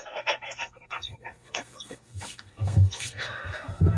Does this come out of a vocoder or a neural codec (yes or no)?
yes